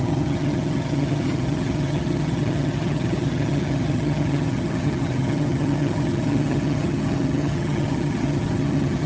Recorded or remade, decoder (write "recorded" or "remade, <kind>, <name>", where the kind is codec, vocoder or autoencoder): remade, vocoder, HiFi-GAN